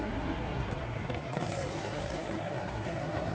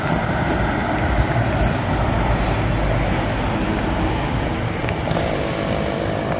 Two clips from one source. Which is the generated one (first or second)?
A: first